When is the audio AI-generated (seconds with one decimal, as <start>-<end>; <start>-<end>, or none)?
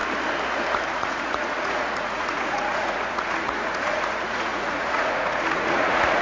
0.9-6.2